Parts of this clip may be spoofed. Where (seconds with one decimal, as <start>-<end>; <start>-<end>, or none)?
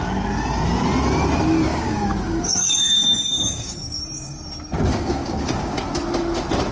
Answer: 1.7-4.0; 4.9-5.8